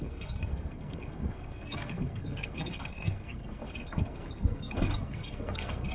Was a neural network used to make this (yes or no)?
yes